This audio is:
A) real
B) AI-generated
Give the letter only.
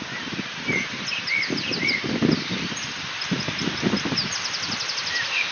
A